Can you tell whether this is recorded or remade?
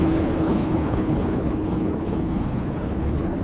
remade